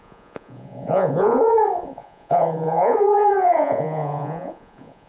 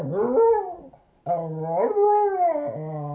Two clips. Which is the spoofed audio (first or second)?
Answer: first